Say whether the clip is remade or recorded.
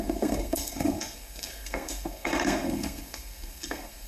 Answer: remade